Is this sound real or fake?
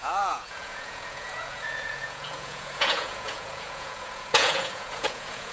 fake